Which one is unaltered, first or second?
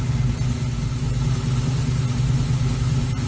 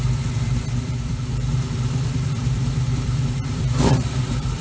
first